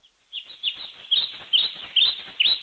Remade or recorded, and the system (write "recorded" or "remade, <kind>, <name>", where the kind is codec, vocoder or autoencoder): recorded